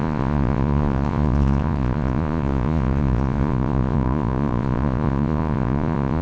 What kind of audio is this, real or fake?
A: fake